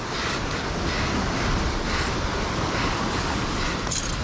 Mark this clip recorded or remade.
recorded